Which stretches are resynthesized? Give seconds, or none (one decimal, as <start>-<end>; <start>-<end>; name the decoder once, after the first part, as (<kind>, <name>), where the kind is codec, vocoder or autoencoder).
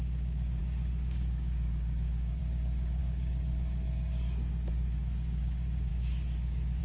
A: 0.0-6.8 (codec, DAC)